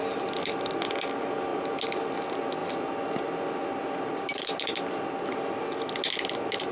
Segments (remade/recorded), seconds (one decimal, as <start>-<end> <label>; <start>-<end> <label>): 0.0-6.7 recorded